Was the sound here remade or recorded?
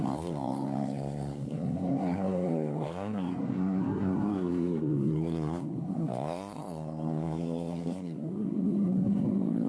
remade